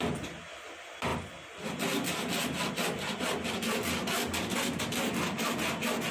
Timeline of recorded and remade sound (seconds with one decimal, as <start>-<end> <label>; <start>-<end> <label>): 0.0-6.1 recorded